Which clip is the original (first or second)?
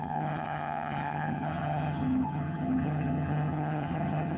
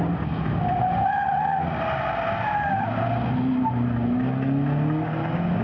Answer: second